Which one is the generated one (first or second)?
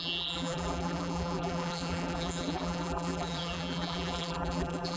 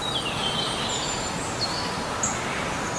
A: first